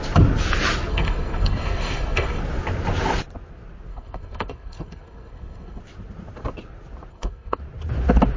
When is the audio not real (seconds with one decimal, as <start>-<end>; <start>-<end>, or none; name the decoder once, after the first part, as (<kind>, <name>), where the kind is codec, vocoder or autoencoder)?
0.9-2.4 (codec, SNAC); 3.9-5.8; 7.1-7.6